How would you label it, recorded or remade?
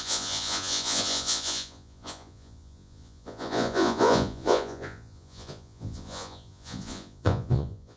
remade